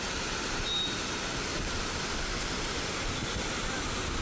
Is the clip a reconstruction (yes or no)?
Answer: no